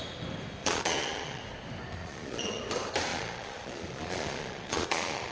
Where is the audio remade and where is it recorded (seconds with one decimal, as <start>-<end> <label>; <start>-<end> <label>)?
0.0-0.6 recorded; 0.6-1.4 remade; 1.4-2.0 recorded; 2.0-2.6 remade; 2.6-3.1 recorded; 3.1-5.3 remade